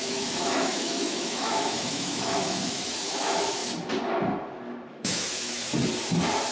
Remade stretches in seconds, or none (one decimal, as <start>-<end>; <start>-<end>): 0.0-3.6; 4.9-5.6